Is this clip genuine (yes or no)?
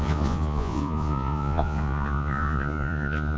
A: no